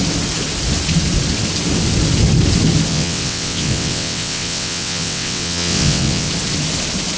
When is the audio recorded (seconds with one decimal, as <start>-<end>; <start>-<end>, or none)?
0.0-2.9; 6.3-7.2